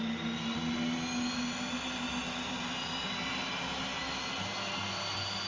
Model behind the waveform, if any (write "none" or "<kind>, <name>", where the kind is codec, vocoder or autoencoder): none